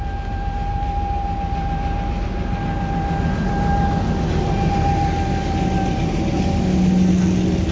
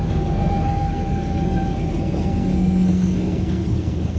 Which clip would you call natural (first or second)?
first